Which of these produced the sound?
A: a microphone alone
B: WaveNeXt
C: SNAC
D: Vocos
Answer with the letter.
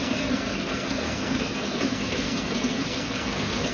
C